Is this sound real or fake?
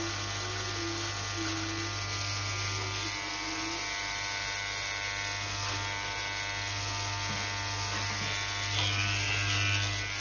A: real